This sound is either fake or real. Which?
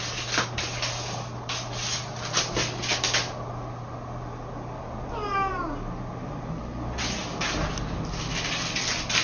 real